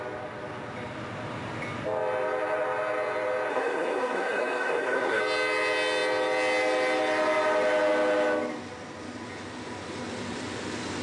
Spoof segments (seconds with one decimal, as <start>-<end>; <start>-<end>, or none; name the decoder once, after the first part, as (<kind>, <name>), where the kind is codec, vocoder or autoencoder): 3.5-5.2 (codec, SNAC)